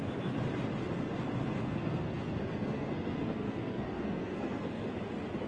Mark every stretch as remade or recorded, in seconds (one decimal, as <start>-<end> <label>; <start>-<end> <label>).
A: 0.0-1.6 recorded; 1.6-4.9 remade; 4.9-5.5 recorded